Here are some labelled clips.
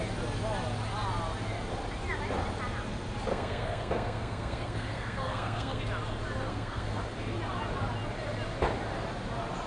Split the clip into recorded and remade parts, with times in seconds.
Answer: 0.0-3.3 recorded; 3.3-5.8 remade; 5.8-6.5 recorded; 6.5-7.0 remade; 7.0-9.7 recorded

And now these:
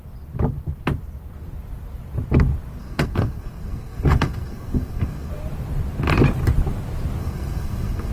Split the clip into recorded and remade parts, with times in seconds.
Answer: 0.0-2.8 recorded; 2.8-5.3 remade; 5.3-7.2 recorded; 7.2-8.1 remade

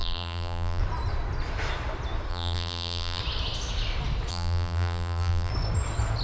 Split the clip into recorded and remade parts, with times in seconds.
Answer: 0.0-0.8 remade; 0.8-2.3 recorded; 2.3-3.2 remade; 3.2-4.3 recorded; 4.3-5.5 remade; 5.5-6.2 recorded

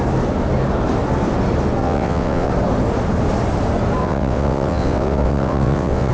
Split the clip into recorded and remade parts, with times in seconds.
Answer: 0.0-1.8 recorded; 1.8-2.5 remade; 2.5-4.0 recorded; 4.0-6.1 remade

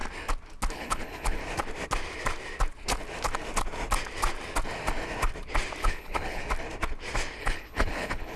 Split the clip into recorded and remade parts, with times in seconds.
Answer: 0.0-0.7 recorded; 0.7-1.4 remade; 1.4-5.8 recorded; 5.8-6.4 remade; 6.4-7.4 recorded; 7.4-8.4 remade

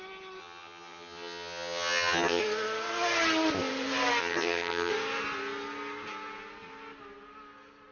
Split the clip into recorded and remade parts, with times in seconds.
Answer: 0.0-0.4 recorded; 0.4-2.4 remade; 2.4-4.2 recorded; 4.2-4.9 remade; 4.9-7.9 recorded

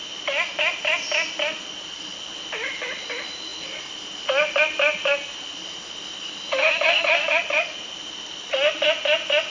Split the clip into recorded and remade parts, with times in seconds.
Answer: 0.0-9.5 recorded